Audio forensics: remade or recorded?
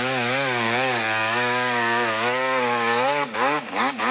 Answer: remade